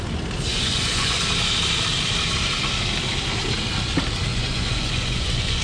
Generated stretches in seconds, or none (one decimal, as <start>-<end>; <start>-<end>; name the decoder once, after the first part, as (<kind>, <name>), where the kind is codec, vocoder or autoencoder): 0.5-1.2 (vocoder, Vocos); 4.3-5.6